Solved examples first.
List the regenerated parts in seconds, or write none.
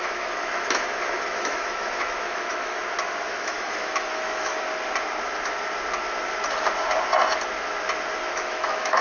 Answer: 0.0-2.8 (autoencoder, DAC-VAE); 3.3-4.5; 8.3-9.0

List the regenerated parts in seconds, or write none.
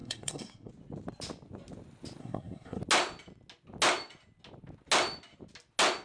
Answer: 0.0-0.7 (codec, SNAC); 2.2-2.8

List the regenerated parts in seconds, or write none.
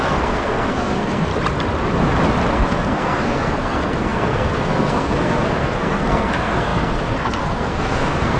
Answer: 0.0-1.3 (codec, SNAC); 2.5-8.4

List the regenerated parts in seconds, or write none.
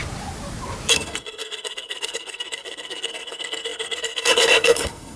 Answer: 0.9-5.2 (codec, SNAC)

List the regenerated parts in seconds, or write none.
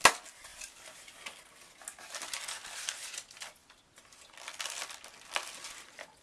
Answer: none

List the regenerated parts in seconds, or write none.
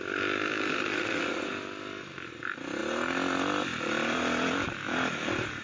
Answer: 0.7-1.2 (codec, SNAC)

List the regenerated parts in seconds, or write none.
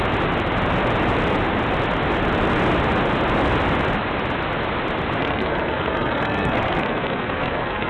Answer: 5.2-7.9 (codec, SNAC)